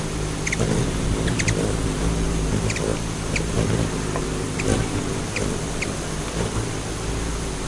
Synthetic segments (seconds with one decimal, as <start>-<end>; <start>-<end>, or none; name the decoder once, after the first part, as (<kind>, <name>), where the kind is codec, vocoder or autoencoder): none